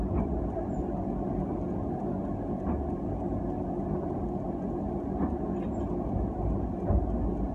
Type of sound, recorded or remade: recorded